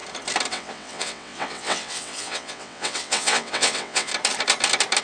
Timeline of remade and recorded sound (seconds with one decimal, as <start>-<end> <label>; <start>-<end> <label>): 0.0-0.5 recorded; 0.5-4.1 remade; 4.1-5.0 recorded